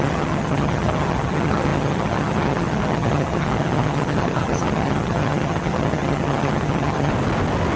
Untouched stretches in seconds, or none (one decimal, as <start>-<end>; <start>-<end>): 7.1-7.8